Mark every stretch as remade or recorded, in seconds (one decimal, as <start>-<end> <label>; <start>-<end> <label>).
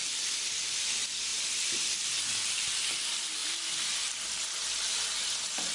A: 0.0-0.8 remade; 0.8-1.3 recorded; 1.3-1.9 remade; 1.9-5.7 recorded